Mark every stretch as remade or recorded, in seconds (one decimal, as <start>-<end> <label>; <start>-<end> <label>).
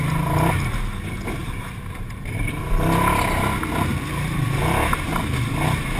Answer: 0.0-1.4 recorded; 1.4-2.6 remade; 2.6-3.9 recorded; 3.9-4.5 remade; 4.5-6.0 recorded